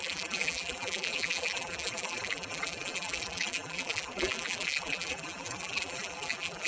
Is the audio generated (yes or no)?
yes